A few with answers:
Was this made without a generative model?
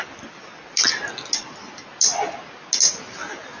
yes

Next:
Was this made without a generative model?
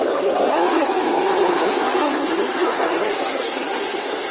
no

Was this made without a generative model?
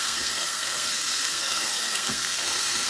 no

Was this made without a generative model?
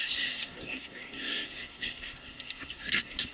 no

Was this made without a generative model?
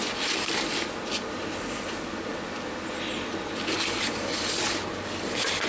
yes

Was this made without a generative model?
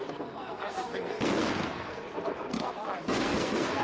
no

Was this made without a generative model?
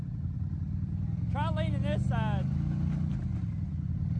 yes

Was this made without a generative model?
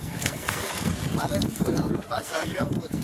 no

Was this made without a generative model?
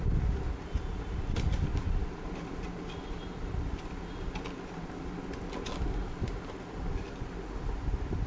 yes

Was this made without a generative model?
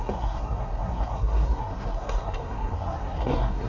no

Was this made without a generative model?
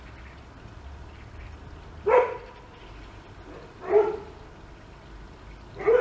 yes